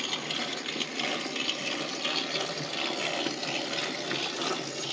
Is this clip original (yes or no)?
yes